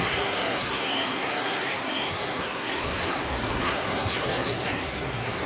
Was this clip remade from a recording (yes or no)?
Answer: yes